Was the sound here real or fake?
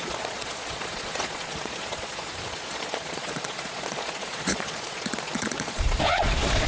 fake